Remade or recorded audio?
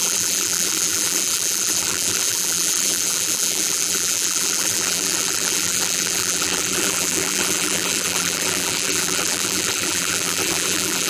remade